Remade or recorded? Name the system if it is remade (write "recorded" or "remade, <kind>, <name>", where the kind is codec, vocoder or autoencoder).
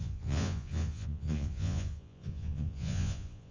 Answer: remade, vocoder, Vocos